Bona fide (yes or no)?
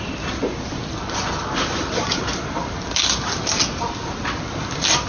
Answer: yes